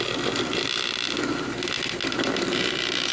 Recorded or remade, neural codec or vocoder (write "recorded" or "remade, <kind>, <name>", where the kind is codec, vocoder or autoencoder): recorded